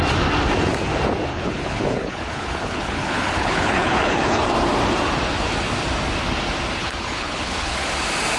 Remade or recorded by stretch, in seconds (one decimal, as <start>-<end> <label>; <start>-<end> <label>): 0.0-1.3 recorded; 1.3-4.4 remade; 4.4-6.8 recorded; 6.8-7.9 remade; 7.9-8.4 recorded